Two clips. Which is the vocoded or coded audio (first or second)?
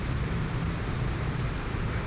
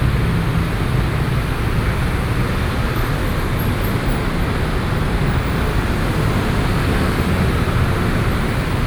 first